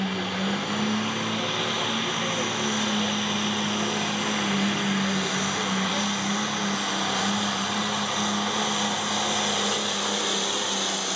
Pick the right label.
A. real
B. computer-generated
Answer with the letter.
A